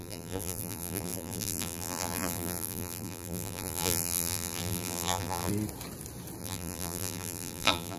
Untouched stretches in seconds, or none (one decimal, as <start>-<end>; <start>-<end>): 5.5-6.4